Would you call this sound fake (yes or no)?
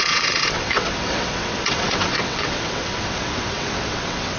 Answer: yes